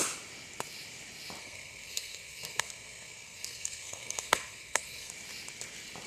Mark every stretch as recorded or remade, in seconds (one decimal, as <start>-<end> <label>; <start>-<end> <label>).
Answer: 0.0-1.4 recorded; 1.4-5.1 remade; 5.1-6.1 recorded